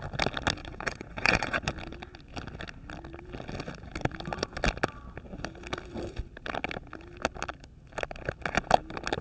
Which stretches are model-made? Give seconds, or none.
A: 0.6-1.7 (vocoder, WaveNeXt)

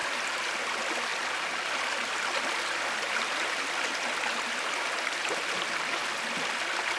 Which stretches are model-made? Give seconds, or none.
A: none

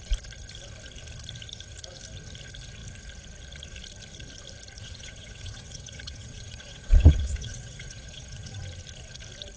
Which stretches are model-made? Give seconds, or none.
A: 4.8-8.6 (vocoder, WaveNeXt)

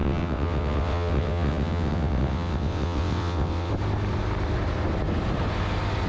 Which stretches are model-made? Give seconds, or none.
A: 0.0-3.7 (vocoder, WaveNeXt)

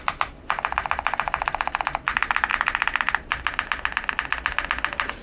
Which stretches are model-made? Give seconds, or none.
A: none

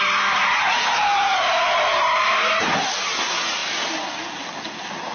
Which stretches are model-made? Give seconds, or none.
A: none